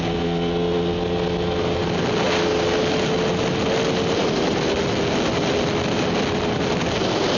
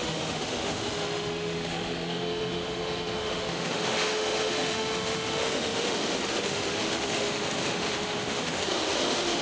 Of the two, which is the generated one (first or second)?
second